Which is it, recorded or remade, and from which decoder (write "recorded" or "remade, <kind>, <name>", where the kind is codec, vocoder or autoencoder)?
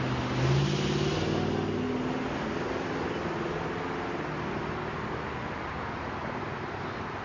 recorded